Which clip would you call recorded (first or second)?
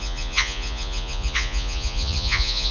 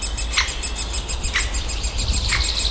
second